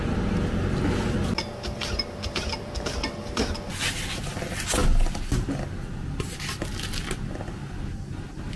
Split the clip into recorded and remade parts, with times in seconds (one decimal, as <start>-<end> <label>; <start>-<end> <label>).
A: 0.0-8.6 recorded